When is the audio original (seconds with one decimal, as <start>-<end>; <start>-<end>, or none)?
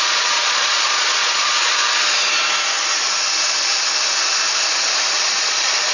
1.8-5.1